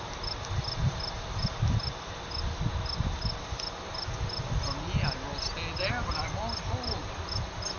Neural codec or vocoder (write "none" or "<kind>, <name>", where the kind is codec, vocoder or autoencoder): none